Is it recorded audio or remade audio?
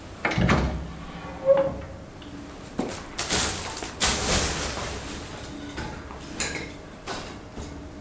recorded